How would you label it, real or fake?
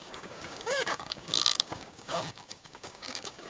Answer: fake